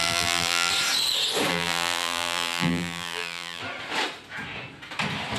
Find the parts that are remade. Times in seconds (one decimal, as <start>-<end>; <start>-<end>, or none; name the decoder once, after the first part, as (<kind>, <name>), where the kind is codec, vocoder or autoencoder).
0.0-0.7 (vocoder, BigVGAN v2); 1.5-3.6